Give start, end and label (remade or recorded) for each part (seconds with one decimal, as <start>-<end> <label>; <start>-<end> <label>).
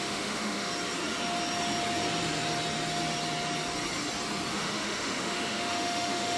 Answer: 0.0-0.7 remade; 0.7-4.5 recorded; 4.5-6.4 remade